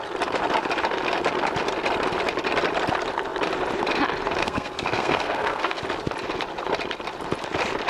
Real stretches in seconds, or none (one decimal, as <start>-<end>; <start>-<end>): 0.0-4.4; 5.8-7.9

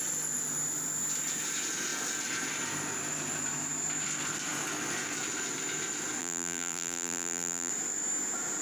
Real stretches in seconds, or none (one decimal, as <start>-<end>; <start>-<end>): 0.0-6.2; 7.7-8.6

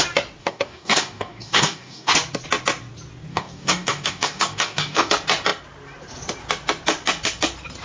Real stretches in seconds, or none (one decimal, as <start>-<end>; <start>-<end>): 0.0-0.4; 2.1-3.3; 5.1-7.8